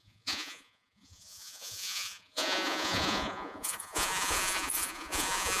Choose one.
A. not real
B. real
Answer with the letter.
A